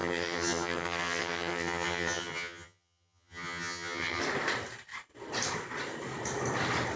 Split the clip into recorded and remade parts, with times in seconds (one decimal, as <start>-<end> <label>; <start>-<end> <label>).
0.0-4.2 remade; 4.2-7.0 recorded